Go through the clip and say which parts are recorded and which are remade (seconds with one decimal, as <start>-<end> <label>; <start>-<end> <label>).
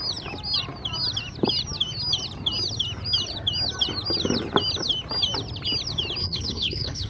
0.0-6.2 recorded; 6.2-7.1 remade